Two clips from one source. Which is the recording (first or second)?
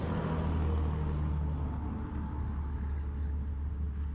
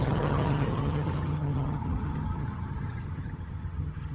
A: first